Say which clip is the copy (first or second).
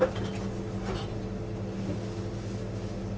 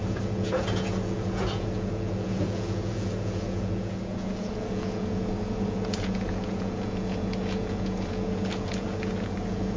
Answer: second